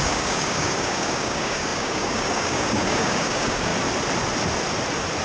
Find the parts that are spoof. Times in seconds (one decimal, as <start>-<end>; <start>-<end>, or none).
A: 0.0-3.7

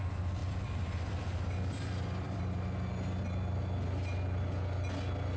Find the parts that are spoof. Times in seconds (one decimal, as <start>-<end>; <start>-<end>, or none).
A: 0.4-2.4

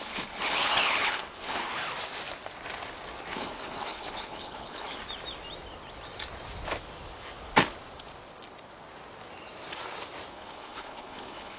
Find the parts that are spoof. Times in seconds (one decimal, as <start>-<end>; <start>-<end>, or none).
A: 0.0-1.7; 3.3-5.0; 10.3-11.6